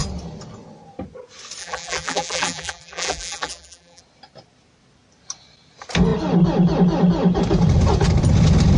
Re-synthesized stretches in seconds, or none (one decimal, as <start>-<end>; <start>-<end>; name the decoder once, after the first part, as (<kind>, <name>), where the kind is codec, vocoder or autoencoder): 1.6-4.0 (vocoder, BigVGAN v2)

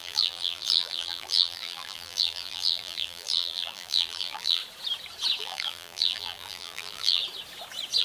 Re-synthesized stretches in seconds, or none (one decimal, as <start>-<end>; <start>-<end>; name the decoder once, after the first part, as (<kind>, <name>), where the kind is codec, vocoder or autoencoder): 0.0-4.6 (vocoder, BigVGAN v2); 5.4-7.2

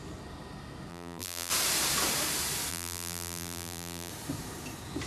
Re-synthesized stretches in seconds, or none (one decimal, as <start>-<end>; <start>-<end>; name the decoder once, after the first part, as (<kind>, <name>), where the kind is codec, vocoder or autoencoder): 0.9-1.5 (vocoder, BigVGAN v2); 2.7-4.1

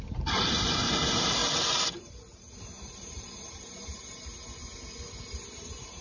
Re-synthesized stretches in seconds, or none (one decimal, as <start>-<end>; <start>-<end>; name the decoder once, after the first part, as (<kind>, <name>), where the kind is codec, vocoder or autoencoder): 0.0-1.4 (vocoder, BigVGAN v2); 2.6-4.3; 5.6-6.0

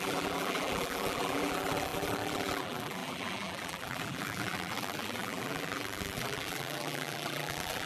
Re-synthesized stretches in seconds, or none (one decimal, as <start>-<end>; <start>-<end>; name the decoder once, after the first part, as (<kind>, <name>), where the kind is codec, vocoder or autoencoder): 0.0-7.9 (vocoder, BigVGAN v2)

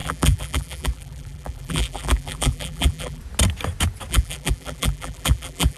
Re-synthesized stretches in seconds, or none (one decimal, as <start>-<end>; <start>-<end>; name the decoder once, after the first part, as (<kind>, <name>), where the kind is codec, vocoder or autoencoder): 0.0-3.2 (vocoder, BigVGAN v2); 4.1-5.8